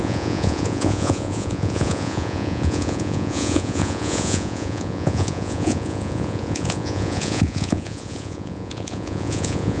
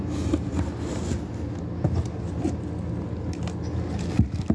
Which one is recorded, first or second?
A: second